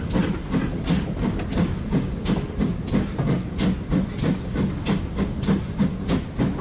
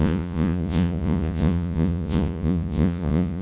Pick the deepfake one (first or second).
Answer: second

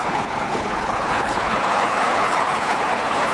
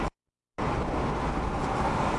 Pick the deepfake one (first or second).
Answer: first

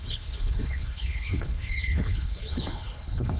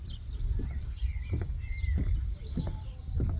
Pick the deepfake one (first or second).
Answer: first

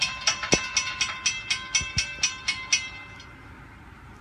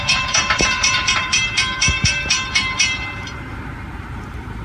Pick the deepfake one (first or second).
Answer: second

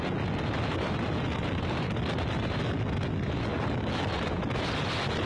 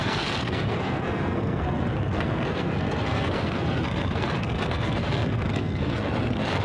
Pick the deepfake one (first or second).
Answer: second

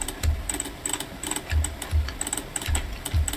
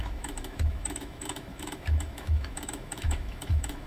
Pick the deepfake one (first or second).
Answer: second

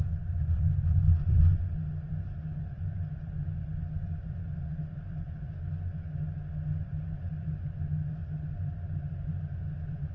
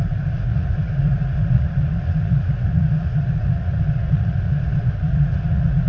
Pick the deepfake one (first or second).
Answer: second